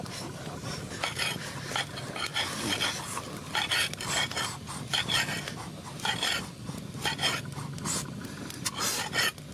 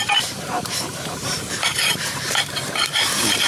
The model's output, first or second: second